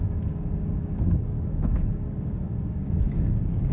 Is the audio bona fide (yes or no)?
no